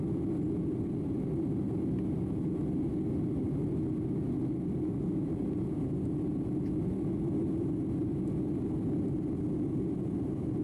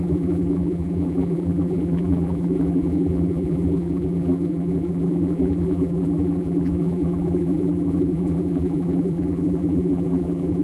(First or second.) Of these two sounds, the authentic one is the first